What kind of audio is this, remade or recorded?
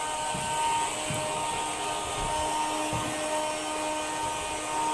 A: recorded